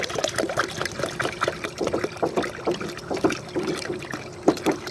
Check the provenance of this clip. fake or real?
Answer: real